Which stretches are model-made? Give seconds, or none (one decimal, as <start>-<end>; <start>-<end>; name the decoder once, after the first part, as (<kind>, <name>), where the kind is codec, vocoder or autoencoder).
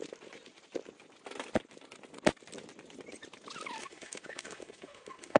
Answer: 3.8-5.4 (autoencoder, DAC-VAE)